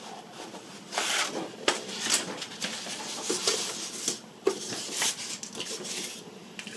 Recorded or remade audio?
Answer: recorded